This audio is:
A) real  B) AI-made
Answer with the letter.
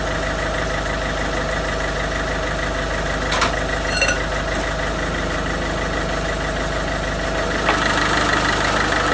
A